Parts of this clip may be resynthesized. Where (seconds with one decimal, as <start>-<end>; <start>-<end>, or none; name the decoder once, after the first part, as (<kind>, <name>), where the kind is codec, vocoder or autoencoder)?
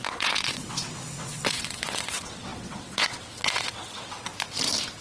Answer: 0.0-4.3 (vocoder, WaveNeXt)